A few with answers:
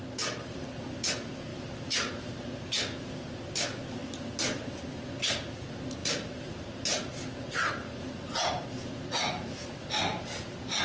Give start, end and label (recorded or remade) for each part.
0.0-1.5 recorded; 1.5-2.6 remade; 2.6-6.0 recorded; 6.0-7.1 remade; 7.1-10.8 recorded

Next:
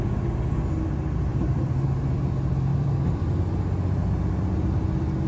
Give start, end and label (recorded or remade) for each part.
0.0-1.3 recorded; 1.3-2.1 remade; 2.1-2.7 recorded; 2.7-3.3 remade; 3.3-5.3 recorded

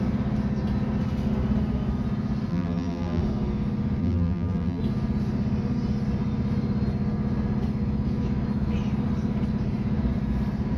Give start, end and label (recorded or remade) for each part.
0.0-2.5 recorded; 2.5-3.2 remade; 3.2-4.0 recorded; 4.0-4.8 remade; 4.8-10.8 recorded

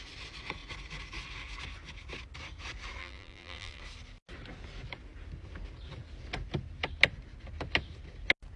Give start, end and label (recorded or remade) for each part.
0.0-3.0 recorded; 3.0-3.8 remade; 3.8-8.6 recorded

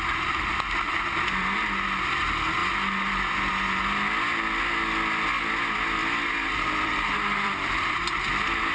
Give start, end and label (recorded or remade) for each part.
0.0-6.0 recorded; 6.0-8.1 remade; 8.1-8.7 recorded

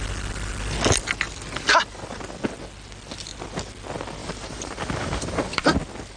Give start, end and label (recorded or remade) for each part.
0.0-4.2 recorded; 4.2-5.7 remade; 5.7-6.2 recorded